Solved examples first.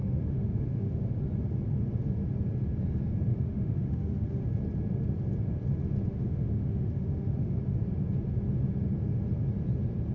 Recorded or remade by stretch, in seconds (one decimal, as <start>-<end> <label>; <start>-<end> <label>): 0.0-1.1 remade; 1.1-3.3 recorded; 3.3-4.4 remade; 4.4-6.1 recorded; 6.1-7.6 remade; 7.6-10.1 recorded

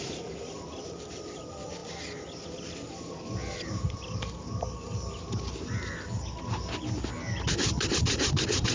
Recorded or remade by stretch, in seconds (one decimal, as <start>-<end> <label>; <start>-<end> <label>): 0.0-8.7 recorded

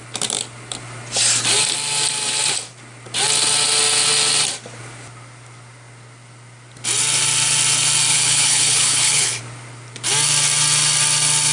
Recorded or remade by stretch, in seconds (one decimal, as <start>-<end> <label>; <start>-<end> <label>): 0.0-8.1 recorded; 8.1-9.4 remade; 9.4-11.5 recorded